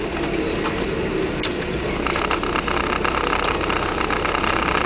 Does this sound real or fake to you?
real